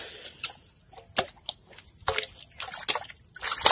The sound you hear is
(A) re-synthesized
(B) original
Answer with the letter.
B